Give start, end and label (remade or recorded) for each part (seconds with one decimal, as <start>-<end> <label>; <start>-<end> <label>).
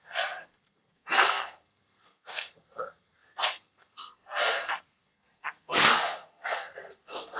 0.0-7.4 remade